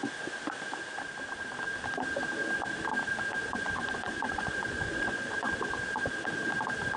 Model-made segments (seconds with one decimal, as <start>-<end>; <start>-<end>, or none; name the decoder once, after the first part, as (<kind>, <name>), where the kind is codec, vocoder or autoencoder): 3.5-5.5 (vocoder, Vocos)